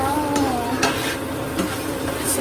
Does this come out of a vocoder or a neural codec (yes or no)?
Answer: no